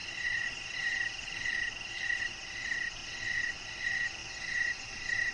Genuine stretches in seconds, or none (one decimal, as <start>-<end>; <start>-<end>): 0.0-5.3